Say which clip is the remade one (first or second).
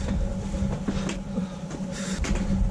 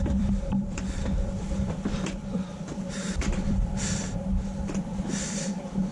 second